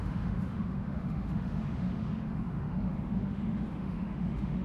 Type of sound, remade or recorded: remade